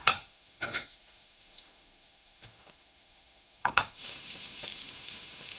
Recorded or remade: remade